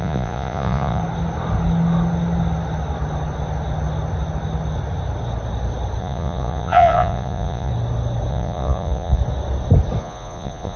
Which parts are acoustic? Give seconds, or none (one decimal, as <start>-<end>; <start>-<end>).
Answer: 1.0-6.0; 7.7-8.3; 9.2-10.0